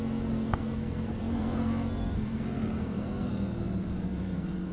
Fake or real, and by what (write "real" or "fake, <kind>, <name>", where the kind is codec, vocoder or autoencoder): fake, codec, SNAC